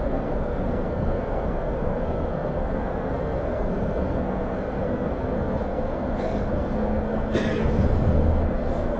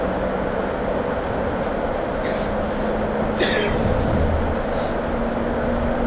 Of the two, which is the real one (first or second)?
second